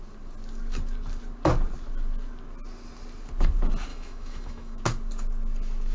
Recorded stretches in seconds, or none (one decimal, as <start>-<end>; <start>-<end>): 0.0-3.9; 4.8-5.9